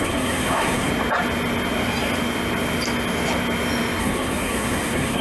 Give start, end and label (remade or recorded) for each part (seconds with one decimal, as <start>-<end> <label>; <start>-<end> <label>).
0.0-0.9 remade; 0.9-4.0 recorded; 4.0-5.2 remade